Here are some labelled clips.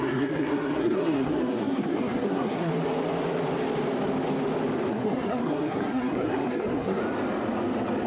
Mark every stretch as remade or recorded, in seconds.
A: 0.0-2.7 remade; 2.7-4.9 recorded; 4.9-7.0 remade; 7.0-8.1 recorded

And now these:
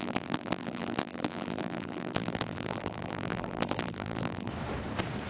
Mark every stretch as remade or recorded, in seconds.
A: 0.0-4.5 remade; 4.5-5.3 recorded

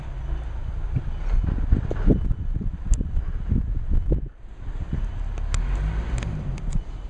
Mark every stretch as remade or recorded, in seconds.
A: 0.0-0.6 recorded; 0.6-1.2 remade; 1.2-7.1 recorded